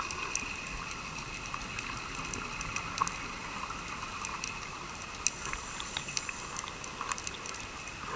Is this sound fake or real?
real